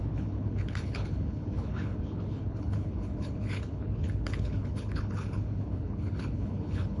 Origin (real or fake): fake